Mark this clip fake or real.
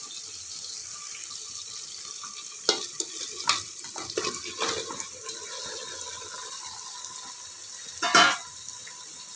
real